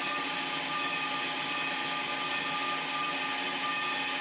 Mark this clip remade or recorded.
recorded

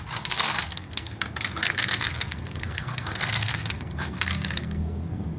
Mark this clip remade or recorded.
remade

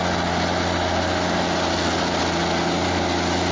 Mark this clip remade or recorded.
recorded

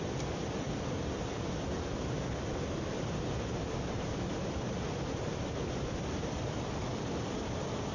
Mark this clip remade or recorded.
recorded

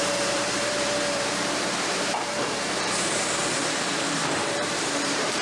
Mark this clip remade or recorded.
remade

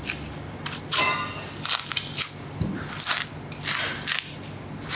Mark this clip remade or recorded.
recorded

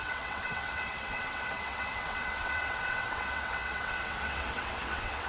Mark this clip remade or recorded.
remade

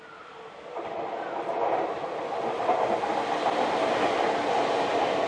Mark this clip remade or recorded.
recorded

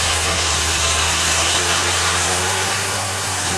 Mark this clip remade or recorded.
remade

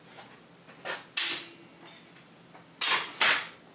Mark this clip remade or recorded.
recorded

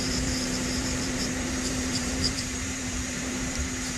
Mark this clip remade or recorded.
remade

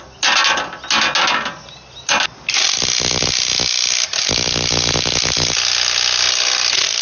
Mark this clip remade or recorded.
recorded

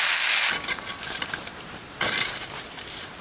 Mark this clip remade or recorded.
recorded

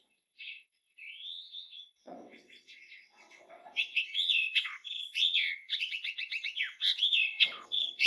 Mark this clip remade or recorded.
remade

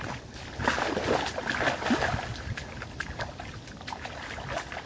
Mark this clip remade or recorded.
recorded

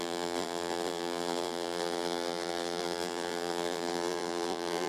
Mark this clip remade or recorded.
remade